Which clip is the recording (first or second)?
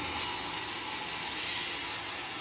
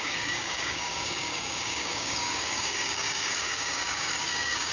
first